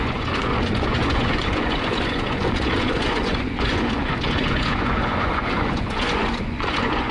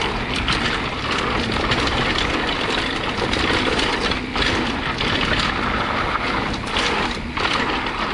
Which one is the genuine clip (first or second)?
second